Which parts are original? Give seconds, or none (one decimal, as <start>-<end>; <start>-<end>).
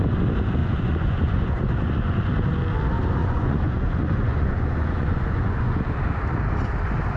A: 0.0-0.6; 2.3-3.2; 5.8-7.2